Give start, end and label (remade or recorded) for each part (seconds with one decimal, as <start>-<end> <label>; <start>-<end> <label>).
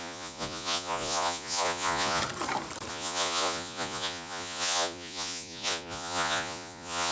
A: 0.0-2.2 remade; 2.2-2.9 recorded; 2.9-7.1 remade